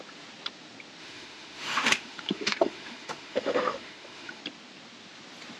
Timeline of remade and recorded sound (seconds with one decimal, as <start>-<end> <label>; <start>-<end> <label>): 0.0-1.0 recorded; 1.0-4.4 remade; 4.4-5.6 recorded